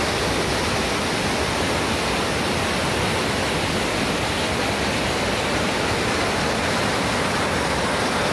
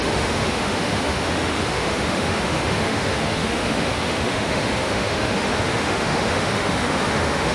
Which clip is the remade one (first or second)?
second